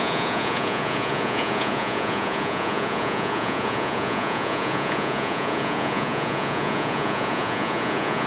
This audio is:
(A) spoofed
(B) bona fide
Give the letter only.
A